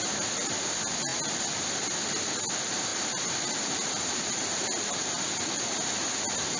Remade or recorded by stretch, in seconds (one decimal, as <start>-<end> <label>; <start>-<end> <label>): 0.0-6.6 recorded